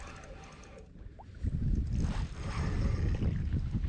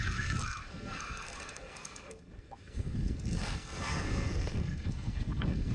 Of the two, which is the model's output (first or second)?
second